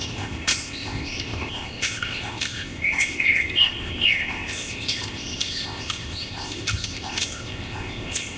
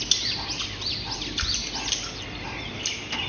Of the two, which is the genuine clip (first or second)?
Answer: second